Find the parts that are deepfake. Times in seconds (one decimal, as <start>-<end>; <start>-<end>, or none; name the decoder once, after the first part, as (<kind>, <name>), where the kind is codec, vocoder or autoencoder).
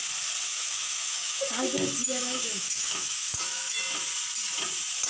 0.5-1.5 (autoencoder, DAC-VAE); 2.0-3.8